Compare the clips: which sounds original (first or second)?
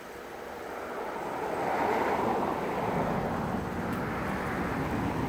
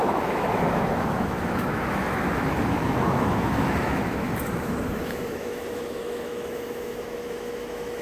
first